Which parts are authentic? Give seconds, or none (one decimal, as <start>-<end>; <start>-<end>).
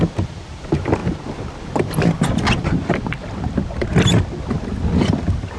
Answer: 0.0-5.6